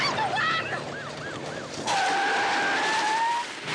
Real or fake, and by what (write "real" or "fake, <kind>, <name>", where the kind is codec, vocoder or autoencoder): real